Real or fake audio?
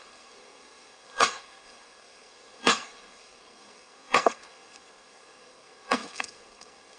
fake